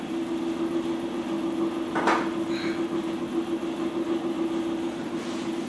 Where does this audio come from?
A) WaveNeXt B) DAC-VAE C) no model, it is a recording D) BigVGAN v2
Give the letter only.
C